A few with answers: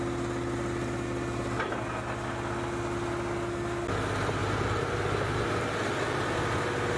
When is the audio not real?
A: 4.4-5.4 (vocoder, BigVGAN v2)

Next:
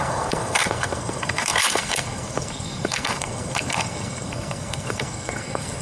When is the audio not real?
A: 0.0-5.8 (codec, SNAC)